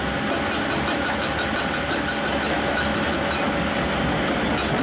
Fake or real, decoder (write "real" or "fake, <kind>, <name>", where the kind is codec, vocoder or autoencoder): real